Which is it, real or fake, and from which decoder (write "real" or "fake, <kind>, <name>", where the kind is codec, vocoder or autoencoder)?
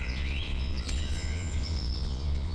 fake, vocoder, Vocos